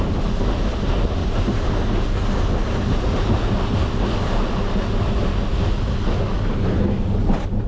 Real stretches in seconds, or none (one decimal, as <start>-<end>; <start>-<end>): 0.0-1.2; 1.7-7.7